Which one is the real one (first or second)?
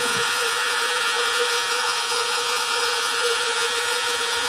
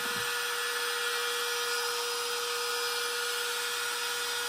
second